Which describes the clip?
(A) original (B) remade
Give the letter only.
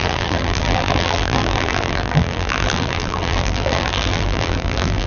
B